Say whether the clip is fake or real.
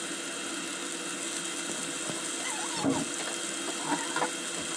real